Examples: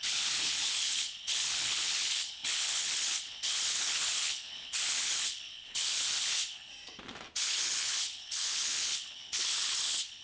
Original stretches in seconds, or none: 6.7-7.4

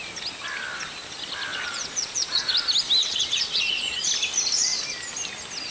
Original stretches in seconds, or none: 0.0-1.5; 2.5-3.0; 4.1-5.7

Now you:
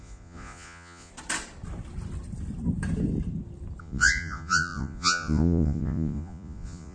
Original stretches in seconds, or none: 1.1-3.8

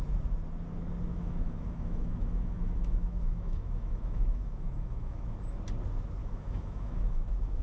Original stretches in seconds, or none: 0.0-1.1; 5.3-6.2

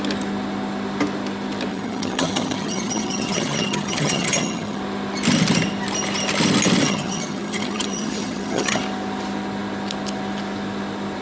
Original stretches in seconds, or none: 0.0-1.7; 4.8-6.8; 8.8-11.2

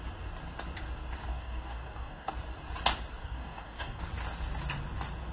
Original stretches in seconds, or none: 0.0-1.3; 2.3-3.2; 4.0-5.3